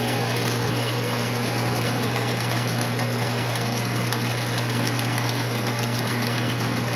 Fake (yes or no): yes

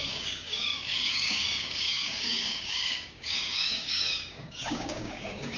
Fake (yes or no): yes